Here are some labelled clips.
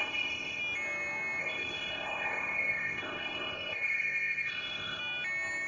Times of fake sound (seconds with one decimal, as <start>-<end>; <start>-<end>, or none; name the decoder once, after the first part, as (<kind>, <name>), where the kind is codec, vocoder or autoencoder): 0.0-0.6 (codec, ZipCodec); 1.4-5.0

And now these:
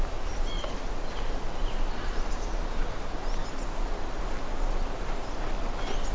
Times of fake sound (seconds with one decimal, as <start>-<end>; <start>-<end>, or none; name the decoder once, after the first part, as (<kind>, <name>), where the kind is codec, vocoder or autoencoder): none

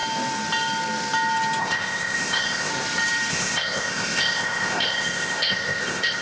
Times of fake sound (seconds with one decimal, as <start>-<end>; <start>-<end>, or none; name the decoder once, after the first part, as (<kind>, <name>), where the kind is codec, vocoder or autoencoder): 1.6-2.7 (codec, ZipCodec); 3.3-6.2

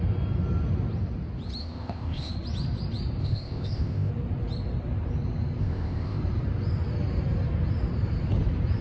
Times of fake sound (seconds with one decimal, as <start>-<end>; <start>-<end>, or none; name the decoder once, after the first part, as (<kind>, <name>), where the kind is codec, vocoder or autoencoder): 1.6-2.3 (codec, ZipCodec); 3.2-4.1; 5.6-6.2

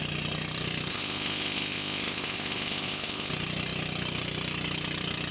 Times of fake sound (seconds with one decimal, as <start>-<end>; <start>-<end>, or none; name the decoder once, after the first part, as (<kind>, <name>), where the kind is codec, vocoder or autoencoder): 0.9-3.3 (codec, ZipCodec)